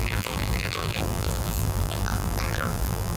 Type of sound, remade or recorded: remade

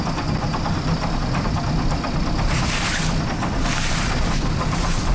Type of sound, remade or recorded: recorded